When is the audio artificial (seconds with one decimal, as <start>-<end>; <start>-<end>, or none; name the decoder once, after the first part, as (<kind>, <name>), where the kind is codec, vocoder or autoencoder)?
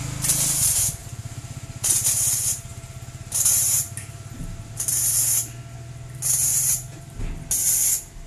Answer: 1.0-5.0 (vocoder, BigVGAN v2); 6.5-7.2